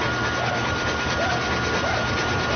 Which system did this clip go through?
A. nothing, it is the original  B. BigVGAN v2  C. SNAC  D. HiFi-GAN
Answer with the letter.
A